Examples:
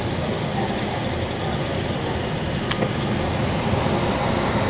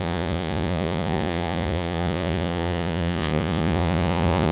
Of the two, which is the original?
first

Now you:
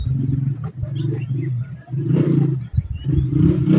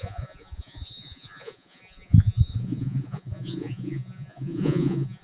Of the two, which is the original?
first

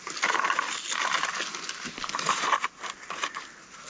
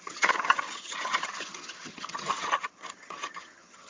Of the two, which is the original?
first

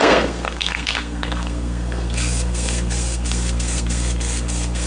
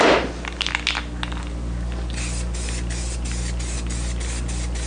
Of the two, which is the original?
second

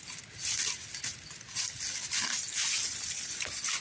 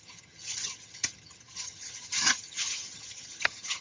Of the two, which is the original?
first